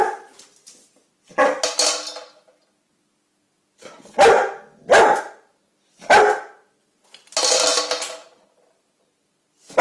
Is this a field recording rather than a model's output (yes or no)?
yes